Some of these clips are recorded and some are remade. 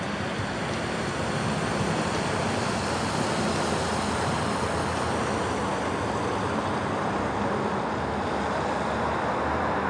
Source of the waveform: recorded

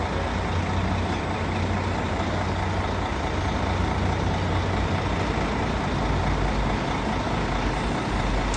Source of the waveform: recorded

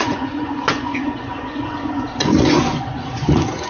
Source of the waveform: remade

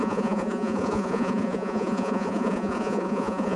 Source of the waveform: remade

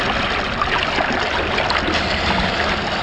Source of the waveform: recorded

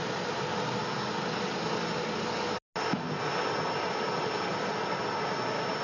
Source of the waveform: recorded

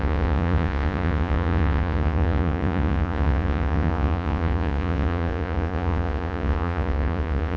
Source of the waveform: remade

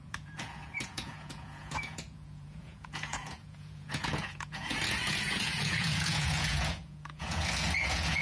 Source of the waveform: remade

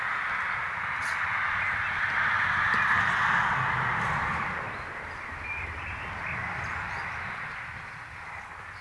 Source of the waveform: recorded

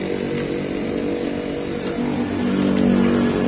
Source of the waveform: recorded